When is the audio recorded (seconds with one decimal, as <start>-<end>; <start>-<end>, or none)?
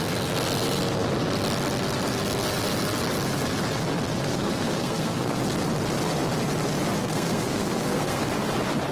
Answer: 0.0-4.3; 5.4-7.0; 8.2-8.9